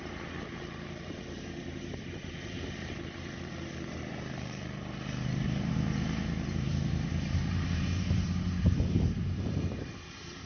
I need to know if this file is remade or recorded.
remade